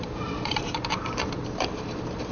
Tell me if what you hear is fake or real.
fake